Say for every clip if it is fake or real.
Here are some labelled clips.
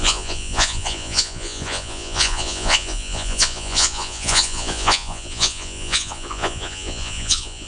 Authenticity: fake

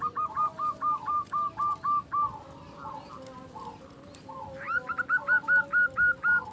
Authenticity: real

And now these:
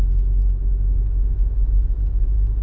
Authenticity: real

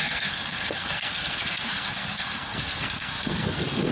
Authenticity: fake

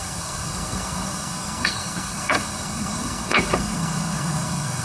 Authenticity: fake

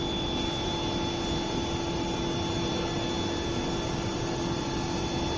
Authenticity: real